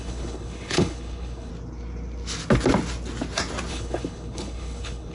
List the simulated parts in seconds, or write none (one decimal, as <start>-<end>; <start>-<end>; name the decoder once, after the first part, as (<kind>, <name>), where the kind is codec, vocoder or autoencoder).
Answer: 0.0-1.5 (codec, HILCodec); 3.7-5.1